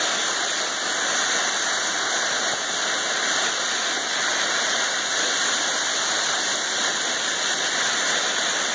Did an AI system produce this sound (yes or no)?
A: no